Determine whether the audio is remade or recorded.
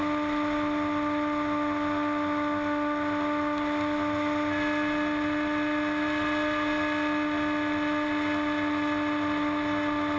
recorded